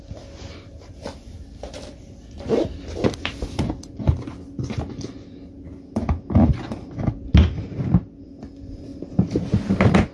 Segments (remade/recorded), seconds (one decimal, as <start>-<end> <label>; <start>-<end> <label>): 0.0-8.9 recorded; 8.9-9.7 remade; 9.7-10.1 recorded